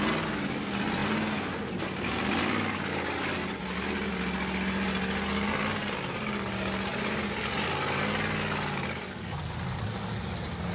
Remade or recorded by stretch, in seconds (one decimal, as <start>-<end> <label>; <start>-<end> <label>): 0.0-10.7 recorded

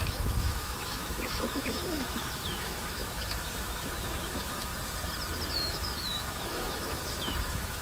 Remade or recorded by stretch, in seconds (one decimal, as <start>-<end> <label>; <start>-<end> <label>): 0.0-4.7 remade; 4.7-5.5 recorded; 5.5-7.8 remade

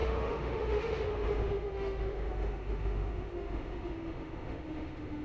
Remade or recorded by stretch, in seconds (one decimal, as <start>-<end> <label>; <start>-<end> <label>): 0.0-5.2 remade

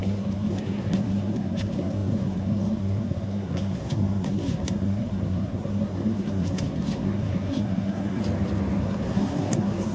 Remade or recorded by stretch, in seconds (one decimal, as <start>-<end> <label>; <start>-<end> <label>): 0.0-8.2 remade; 8.2-8.8 recorded; 8.8-9.9 remade

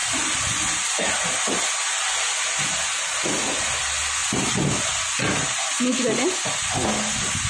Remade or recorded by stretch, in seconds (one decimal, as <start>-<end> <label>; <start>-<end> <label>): 0.0-7.5 recorded

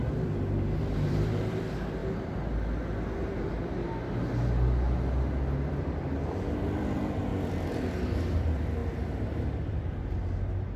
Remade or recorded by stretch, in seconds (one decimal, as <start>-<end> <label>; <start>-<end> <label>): 0.0-2.0 remade; 2.0-5.7 recorded; 5.7-7.3 remade; 7.3-8.0 recorded; 8.0-8.8 remade; 8.8-10.8 recorded